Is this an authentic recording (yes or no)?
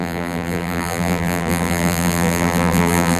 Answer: no